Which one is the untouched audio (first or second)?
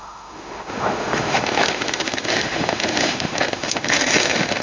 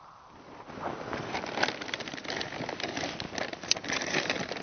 second